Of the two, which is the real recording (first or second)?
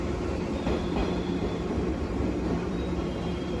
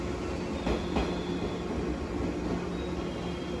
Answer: second